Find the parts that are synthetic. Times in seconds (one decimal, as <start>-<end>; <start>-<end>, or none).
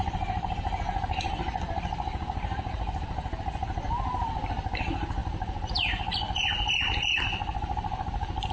none